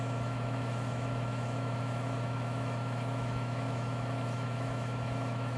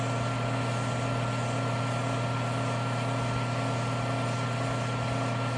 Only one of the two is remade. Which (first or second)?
first